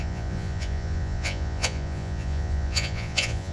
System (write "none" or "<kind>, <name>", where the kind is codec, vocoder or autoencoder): vocoder, Vocos